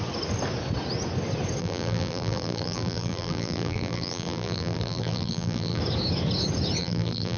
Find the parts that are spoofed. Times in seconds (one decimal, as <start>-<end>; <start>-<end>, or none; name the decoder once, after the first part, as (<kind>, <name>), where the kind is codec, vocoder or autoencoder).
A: 1.6-5.8 (vocoder, BigVGAN v2); 6.8-7.4